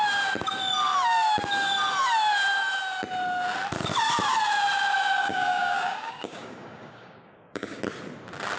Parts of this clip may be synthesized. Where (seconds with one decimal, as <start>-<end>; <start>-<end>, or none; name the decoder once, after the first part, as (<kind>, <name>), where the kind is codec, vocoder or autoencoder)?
5.2-7.8 (codec, DAC)